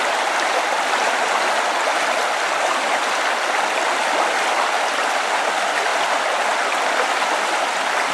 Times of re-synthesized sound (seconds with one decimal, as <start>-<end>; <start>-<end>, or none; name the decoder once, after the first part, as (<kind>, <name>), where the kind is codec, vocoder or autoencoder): none